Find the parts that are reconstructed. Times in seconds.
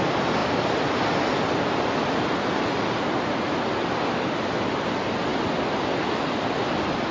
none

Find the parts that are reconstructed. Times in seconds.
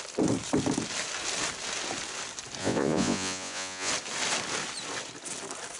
2.6-3.9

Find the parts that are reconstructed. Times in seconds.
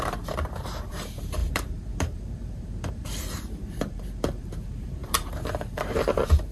0.0-6.5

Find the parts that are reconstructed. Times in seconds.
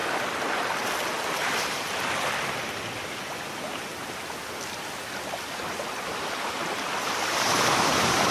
none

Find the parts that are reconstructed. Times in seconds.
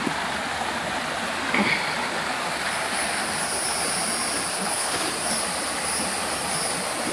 4.5-5.0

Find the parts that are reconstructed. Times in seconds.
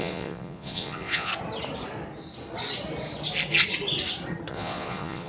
0.0-1.3; 4.5-5.3